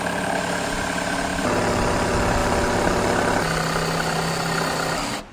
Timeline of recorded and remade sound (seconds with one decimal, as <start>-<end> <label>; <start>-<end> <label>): 0.0-5.3 recorded